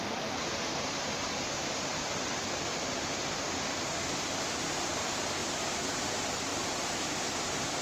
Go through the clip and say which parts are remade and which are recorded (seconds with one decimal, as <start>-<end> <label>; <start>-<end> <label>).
0.0-1.9 recorded; 1.9-3.2 remade; 3.2-5.4 recorded; 5.4-6.1 remade; 6.1-6.5 recorded; 6.5-7.8 remade